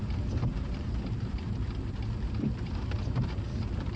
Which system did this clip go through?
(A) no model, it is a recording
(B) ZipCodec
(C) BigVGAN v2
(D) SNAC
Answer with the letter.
C